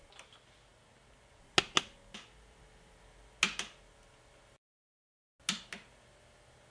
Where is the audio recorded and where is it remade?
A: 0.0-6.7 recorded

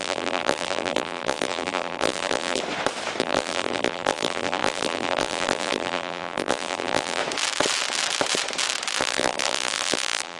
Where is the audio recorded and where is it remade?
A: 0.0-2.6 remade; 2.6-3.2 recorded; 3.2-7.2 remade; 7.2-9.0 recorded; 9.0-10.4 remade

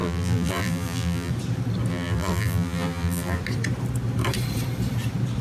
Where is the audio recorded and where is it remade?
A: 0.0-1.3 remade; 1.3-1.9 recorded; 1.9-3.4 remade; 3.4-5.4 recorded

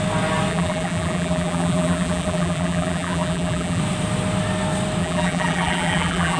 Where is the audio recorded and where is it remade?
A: 0.0-0.5 recorded; 0.5-3.8 remade; 3.8-5.0 recorded; 5.0-6.4 remade